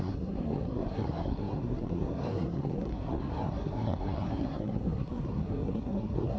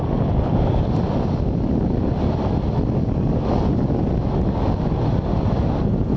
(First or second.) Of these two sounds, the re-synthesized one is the first